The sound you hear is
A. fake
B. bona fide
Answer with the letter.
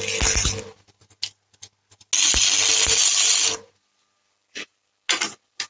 B